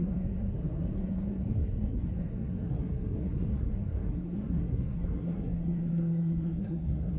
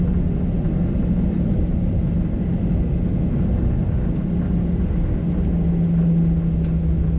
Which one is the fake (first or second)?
first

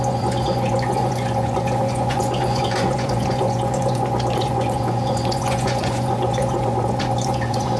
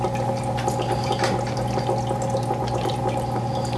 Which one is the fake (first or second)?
first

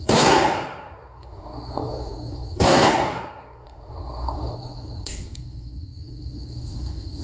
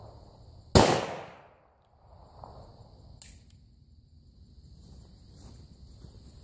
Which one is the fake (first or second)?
first